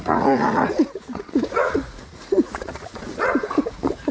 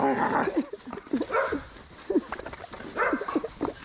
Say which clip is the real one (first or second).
second